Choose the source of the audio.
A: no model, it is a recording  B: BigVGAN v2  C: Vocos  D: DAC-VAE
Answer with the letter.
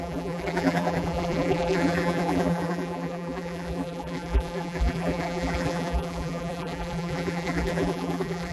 B